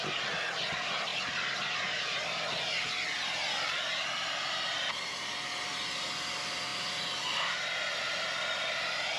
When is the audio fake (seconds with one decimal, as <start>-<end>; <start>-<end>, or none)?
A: 1.1-2.1; 6.7-9.2